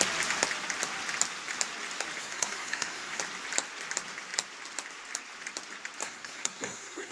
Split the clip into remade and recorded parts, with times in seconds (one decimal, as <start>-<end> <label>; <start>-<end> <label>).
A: 0.0-2.2 recorded; 2.2-3.2 remade; 3.2-6.0 recorded; 6.0-7.1 remade